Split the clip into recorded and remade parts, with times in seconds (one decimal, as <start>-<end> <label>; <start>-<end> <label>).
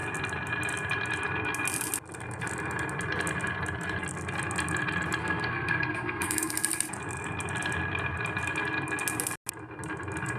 0.0-5.2 recorded; 5.2-6.5 remade; 6.5-10.4 recorded